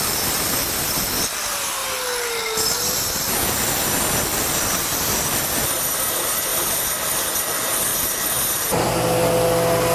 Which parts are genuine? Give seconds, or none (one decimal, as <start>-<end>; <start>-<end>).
0.0-6.5; 7.3-9.9